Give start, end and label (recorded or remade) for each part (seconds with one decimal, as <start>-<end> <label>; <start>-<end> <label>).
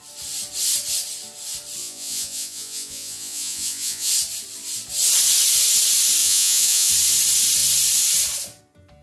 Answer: 0.0-1.8 recorded; 1.8-4.1 remade; 4.1-6.2 recorded; 6.2-6.9 remade; 6.9-9.0 recorded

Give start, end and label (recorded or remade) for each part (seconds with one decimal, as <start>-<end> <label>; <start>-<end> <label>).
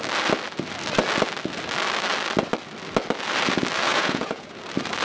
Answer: 0.0-3.9 recorded; 3.9-4.6 remade; 4.6-5.0 recorded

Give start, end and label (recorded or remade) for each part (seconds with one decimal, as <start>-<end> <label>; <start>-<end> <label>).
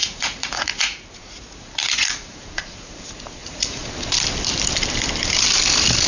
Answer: 0.0-3.0 remade; 3.0-3.4 recorded; 3.4-3.9 remade; 3.9-6.1 recorded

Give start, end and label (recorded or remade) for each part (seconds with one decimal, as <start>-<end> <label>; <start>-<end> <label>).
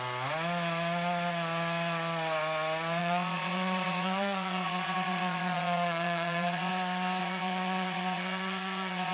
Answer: 0.0-3.0 recorded; 3.0-6.7 remade; 6.7-7.2 recorded; 7.2-9.1 remade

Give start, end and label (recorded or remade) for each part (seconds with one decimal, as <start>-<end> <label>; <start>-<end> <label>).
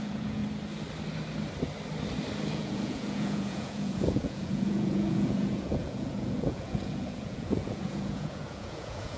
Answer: 0.0-0.4 remade; 0.4-2.5 recorded; 2.5-9.2 remade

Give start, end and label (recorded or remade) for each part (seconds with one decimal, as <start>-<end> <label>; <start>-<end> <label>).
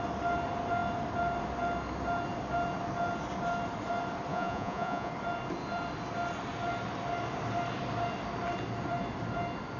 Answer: 0.0-4.3 recorded; 4.3-5.1 remade; 5.1-9.8 recorded